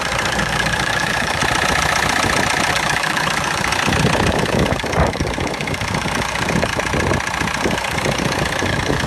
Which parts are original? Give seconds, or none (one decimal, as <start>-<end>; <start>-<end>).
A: 1.4-2.7; 3.7-4.3; 6.7-7.6